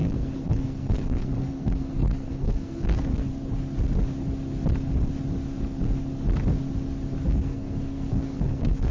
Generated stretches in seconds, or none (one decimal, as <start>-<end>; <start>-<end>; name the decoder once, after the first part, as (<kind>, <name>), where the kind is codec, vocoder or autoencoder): 0.0-3.3 (codec, SNAC); 7.3-8.9